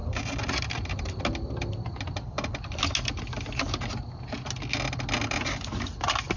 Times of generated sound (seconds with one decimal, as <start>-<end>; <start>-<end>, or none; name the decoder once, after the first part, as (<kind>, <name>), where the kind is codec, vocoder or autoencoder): 0.0-1.2 (vocoder, BigVGAN v2)

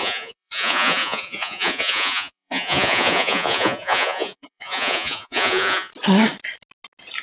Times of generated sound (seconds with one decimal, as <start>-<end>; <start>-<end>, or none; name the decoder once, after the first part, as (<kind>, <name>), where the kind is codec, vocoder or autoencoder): 0.0-5.9 (vocoder, Vocos)

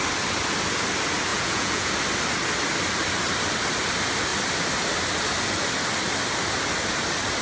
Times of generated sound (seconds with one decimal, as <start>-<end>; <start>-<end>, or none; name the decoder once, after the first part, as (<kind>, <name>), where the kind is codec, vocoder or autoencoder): 1.3-1.9 (vocoder, Vocos)

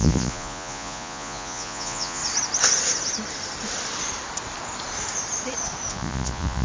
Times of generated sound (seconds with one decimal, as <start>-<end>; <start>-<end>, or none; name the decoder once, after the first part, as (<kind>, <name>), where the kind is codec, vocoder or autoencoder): 0.0-2.2 (vocoder, Vocos); 5.9-6.6